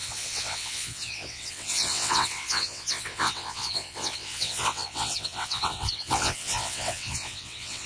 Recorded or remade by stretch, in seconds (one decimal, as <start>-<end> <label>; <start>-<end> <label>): 0.0-7.9 remade